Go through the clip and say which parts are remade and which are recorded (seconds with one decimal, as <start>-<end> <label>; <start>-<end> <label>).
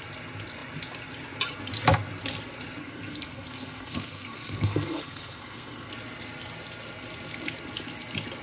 0.0-2.8 recorded; 2.8-5.9 remade; 5.9-8.4 recorded